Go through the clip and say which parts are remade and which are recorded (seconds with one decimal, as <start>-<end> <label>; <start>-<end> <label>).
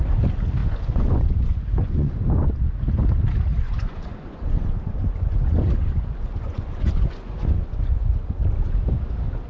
0.0-0.6 recorded; 0.6-2.5 remade; 2.5-3.5 recorded; 3.5-8.4 remade; 8.4-9.5 recorded